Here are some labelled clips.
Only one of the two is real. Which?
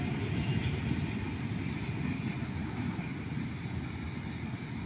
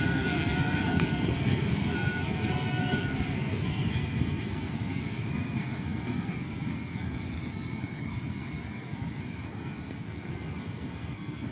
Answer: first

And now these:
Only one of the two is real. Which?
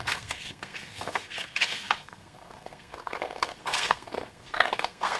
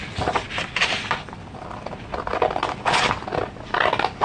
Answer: second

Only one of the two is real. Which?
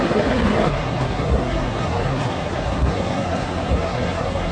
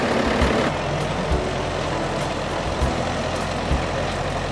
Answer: second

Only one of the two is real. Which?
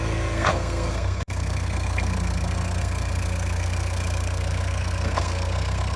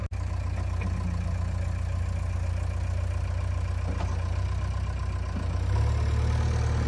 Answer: second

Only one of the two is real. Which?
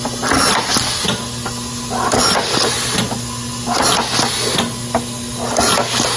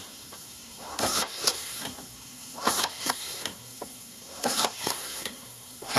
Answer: first